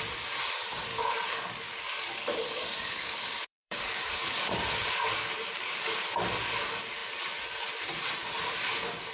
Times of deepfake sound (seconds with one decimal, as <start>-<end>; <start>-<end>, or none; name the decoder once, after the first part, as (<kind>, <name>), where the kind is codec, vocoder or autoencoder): 0.9-4.5 (codec, DAC); 5.1-6.0